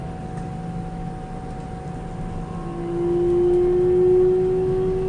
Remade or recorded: recorded